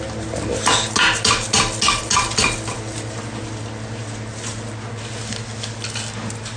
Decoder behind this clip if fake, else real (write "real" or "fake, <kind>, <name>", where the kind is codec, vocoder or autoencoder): real